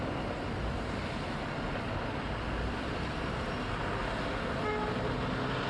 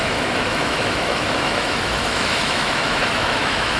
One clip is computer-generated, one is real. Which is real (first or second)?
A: first